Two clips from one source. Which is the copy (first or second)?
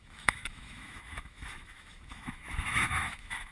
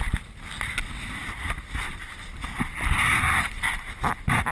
first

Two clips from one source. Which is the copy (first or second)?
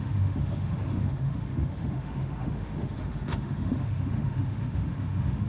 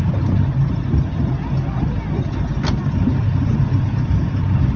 first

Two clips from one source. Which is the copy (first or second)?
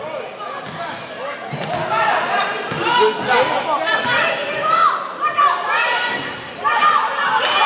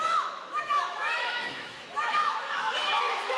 second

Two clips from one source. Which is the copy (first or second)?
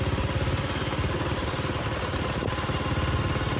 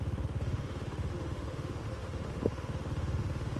second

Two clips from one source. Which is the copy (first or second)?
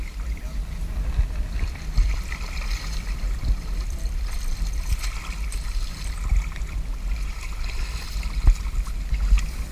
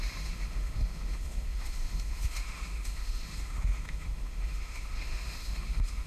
second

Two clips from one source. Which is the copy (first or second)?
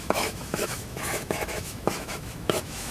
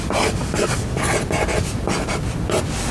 first